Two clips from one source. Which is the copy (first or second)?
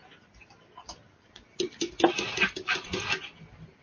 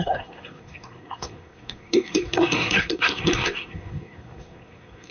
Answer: second